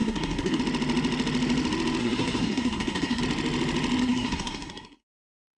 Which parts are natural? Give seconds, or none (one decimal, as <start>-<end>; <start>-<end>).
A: 0.6-2.0; 3.2-4.0